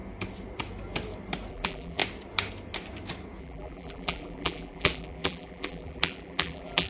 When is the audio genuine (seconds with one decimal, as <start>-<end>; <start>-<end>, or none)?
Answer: 0.0-1.5; 2.0-3.4